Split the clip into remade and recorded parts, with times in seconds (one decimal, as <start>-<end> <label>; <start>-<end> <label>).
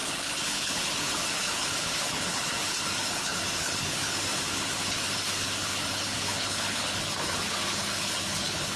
0.0-8.8 remade